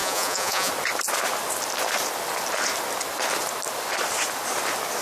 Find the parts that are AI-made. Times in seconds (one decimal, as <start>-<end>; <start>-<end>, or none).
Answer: 0.0-0.7